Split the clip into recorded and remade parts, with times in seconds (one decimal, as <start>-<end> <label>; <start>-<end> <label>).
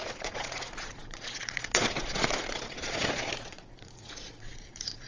0.0-5.1 remade